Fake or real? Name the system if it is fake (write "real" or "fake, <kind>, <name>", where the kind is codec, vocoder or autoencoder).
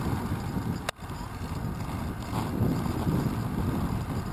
real